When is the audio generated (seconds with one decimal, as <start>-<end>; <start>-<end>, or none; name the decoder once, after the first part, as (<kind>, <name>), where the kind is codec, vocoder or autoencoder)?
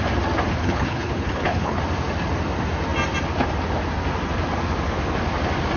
0.6-1.8 (codec, HILCodec)